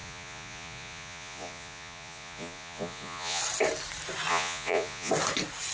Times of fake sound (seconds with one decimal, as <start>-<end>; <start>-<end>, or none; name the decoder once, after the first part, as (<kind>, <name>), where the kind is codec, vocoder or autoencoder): 0.0-3.4 (vocoder, Vocos); 4.3-5.1